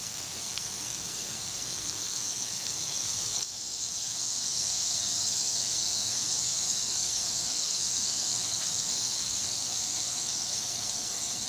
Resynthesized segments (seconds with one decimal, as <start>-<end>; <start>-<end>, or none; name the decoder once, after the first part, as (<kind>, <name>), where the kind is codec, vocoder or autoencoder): 0.0-11.5 (codec, SNAC)